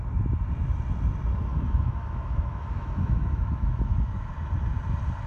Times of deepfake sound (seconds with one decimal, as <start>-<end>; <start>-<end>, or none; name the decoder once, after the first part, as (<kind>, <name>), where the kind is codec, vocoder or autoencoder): 1.5-4.3 (autoencoder, DAC-VAE)